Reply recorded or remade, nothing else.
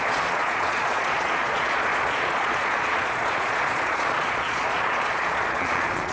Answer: remade